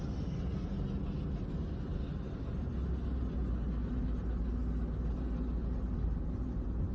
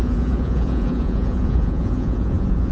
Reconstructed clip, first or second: second